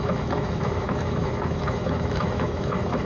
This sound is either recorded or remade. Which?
remade